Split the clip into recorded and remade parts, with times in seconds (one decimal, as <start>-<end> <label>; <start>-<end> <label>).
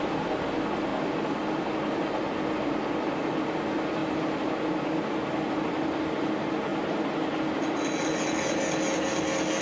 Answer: 0.0-9.6 recorded